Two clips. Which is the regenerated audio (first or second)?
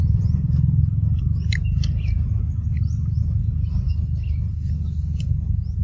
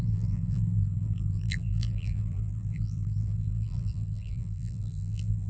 second